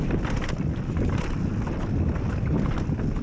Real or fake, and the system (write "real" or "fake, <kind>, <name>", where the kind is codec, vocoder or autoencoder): real